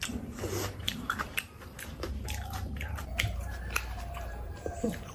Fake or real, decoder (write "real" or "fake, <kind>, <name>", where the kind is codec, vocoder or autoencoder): fake, vocoder, BigVGAN v2